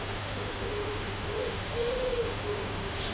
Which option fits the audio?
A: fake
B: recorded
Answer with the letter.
A